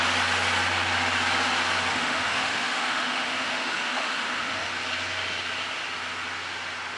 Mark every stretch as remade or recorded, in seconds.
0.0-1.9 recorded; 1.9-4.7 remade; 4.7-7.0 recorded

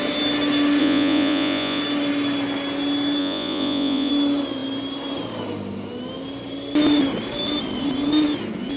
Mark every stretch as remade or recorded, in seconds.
0.0-0.8 recorded; 0.8-1.8 remade; 1.8-3.2 recorded; 3.2-4.1 remade; 4.1-8.8 recorded

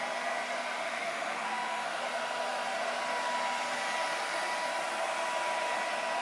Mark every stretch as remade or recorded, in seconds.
0.0-0.8 recorded; 0.8-2.0 remade; 2.0-6.2 recorded

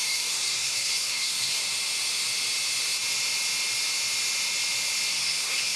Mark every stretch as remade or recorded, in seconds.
0.0-1.6 remade; 1.6-5.1 recorded; 5.1-5.8 remade

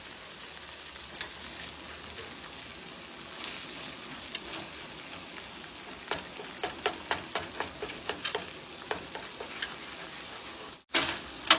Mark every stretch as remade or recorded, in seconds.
0.0-11.6 recorded

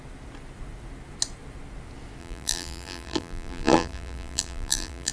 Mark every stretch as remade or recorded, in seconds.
0.0-2.2 recorded; 2.2-5.1 remade

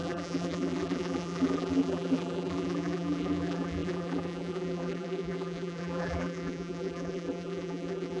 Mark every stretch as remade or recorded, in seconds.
0.0-8.2 remade

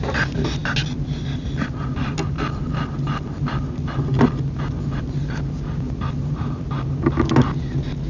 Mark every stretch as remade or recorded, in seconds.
0.0-8.1 recorded